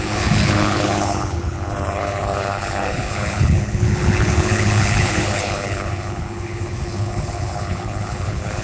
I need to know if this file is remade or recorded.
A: remade